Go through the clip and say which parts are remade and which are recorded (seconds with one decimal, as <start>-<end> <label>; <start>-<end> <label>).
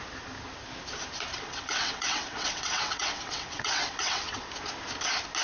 0.0-1.3 recorded; 1.3-4.5 remade; 4.5-5.4 recorded